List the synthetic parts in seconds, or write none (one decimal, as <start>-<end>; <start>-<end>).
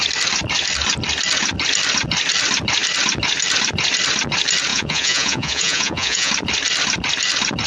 4.7-6.3